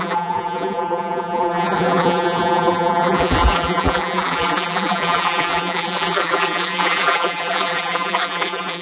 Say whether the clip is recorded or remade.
remade